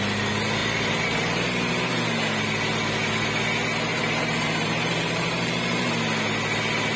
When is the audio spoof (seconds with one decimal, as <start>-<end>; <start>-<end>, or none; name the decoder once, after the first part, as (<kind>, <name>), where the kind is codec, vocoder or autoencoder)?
0.6-1.7 (vocoder, BigVGAN v2); 3.9-5.9